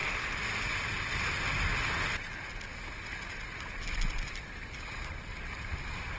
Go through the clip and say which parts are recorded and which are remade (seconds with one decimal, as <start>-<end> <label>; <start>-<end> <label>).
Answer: 0.0-5.3 recorded; 5.3-6.2 remade